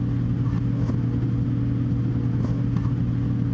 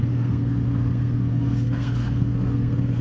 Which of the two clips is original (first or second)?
first